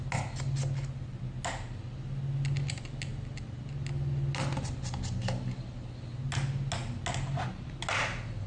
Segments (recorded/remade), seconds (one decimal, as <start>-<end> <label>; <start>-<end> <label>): 0.0-8.5 recorded